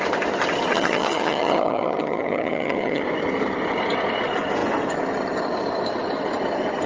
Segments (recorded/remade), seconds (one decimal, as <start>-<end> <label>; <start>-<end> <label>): 0.0-0.7 recorded; 0.7-3.0 remade; 3.0-6.9 recorded